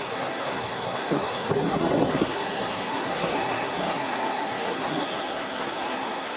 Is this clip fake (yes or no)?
yes